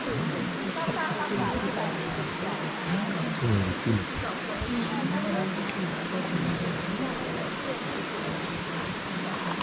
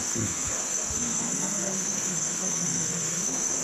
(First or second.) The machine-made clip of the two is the second